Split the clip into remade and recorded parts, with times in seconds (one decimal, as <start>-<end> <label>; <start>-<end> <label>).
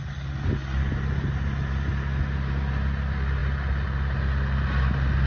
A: 0.0-5.3 recorded